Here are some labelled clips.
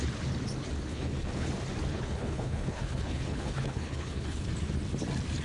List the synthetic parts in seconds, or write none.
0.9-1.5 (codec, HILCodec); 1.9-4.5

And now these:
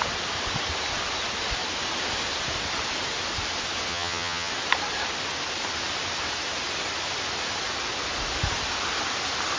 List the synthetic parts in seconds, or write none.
3.9-4.5 (vocoder, HiFi-GAN)

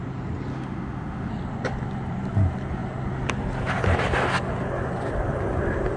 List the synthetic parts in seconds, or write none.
0.5-1.3 (autoencoder, DAC-VAE)

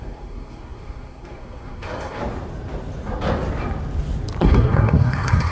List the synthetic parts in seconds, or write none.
0.0-2.2 (codec, SNAC); 4.4-5.5

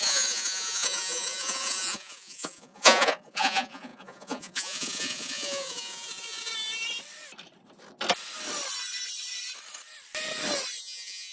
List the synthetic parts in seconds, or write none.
0.0-6.5 (vocoder, Vocos); 10.8-11.3